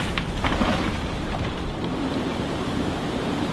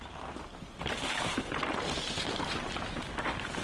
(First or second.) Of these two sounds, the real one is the second